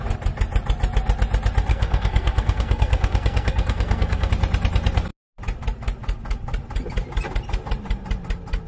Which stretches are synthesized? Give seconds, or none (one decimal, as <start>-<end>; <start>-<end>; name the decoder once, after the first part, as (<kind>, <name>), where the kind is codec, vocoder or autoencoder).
1.7-4.3 (codec, SNAC)